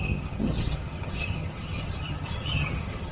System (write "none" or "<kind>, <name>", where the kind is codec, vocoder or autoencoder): vocoder, HiFi-GAN